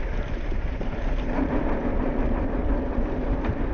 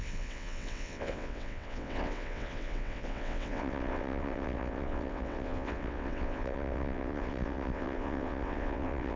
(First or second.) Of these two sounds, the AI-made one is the second